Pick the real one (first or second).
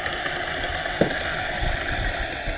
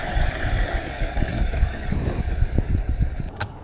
first